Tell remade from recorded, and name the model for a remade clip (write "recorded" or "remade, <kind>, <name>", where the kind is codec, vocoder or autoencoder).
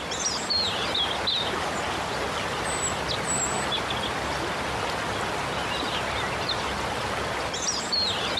recorded